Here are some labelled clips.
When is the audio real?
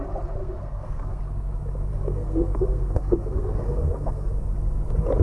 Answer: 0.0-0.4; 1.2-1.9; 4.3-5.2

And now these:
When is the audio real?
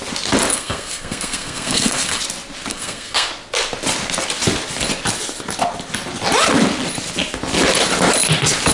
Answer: 0.0-0.5; 2.2-2.7; 3.3-8.7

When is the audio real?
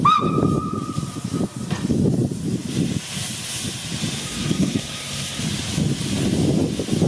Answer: 0.0-4.2; 5.4-7.1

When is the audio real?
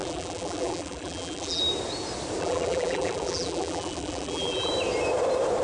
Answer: 1.6-2.4; 4.7-5.6